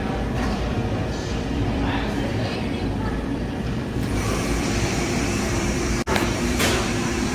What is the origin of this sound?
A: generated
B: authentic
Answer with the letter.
A